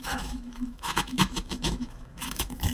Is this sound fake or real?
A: fake